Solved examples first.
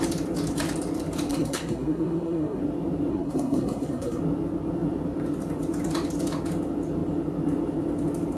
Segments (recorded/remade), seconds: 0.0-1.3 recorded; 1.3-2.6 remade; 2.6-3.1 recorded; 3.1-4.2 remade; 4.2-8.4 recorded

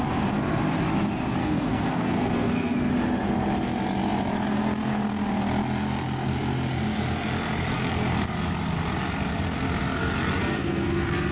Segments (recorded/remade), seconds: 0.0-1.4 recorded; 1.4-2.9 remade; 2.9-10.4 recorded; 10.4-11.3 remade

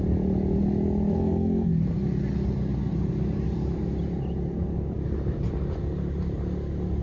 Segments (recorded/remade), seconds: 0.0-1.1 recorded; 1.1-1.7 remade; 1.7-7.0 recorded

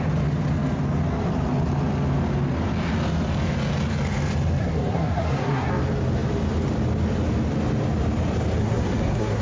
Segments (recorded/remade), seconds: 0.0-4.6 recorded; 4.6-5.7 remade; 5.7-8.6 recorded; 8.6-9.4 remade

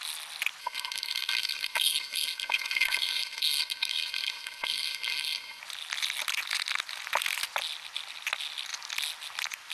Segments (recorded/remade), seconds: 0.0-0.6 recorded; 0.6-5.6 remade; 5.6-9.7 recorded

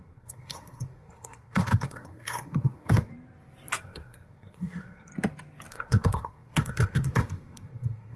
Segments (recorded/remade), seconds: 0.0-3.1 remade; 3.1-3.8 recorded; 3.8-5.1 remade; 5.1-5.7 recorded; 5.7-8.2 remade

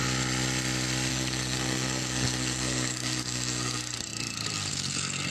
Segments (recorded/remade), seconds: 0.0-1.1 recorded; 1.1-5.3 remade